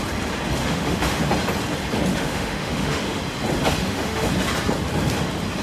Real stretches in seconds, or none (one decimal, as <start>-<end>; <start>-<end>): 0.0-0.6; 1.2-2.1; 3.2-3.8; 4.3-5.6